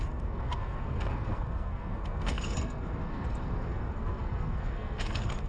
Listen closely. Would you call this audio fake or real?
fake